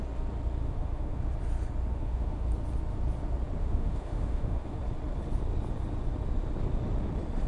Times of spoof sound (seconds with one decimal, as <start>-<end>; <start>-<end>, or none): 0.6-1.2; 1.9-2.5; 3.6-4.8